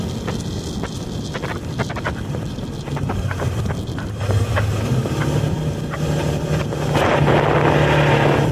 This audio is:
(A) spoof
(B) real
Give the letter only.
B